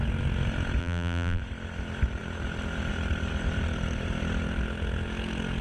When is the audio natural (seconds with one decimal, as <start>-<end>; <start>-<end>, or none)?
0.0-0.8; 1.4-5.6